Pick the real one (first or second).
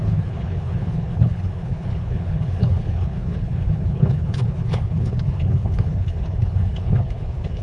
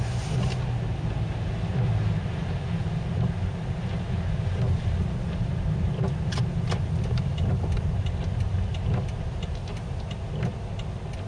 second